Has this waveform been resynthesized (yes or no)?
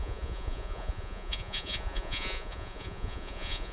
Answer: yes